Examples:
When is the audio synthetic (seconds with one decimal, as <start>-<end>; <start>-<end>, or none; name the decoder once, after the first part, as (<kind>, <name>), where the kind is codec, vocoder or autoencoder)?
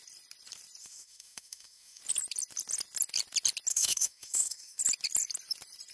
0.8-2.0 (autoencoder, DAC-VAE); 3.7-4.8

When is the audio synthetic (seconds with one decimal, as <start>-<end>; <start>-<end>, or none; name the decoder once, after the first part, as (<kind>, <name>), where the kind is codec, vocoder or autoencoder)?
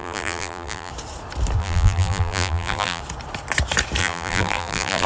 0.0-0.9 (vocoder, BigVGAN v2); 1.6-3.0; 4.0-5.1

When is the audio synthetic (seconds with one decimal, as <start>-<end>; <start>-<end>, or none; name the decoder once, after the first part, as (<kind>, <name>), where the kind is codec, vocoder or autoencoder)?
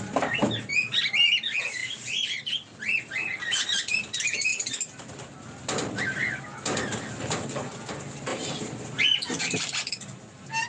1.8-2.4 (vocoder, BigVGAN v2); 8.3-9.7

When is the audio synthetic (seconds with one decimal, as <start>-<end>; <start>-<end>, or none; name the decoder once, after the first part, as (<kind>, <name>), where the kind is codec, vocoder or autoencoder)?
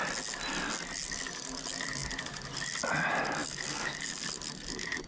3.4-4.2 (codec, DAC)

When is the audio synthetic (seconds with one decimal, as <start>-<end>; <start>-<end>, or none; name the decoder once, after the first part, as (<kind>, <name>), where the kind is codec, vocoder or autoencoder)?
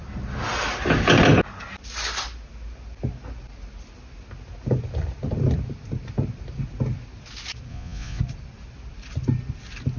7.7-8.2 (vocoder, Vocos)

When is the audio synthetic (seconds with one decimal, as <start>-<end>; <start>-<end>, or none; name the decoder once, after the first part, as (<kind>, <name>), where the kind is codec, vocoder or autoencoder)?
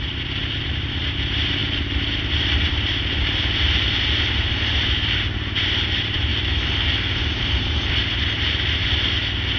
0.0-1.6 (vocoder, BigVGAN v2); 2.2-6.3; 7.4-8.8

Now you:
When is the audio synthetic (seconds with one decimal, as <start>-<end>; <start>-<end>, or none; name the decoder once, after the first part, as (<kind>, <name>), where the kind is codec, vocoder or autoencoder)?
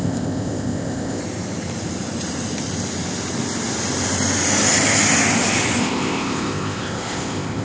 0.0-1.2 (codec, ZipCodec); 5.8-7.6